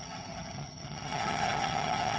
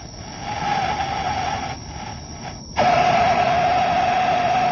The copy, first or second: first